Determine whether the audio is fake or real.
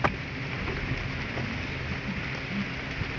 real